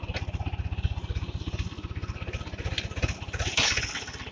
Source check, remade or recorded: recorded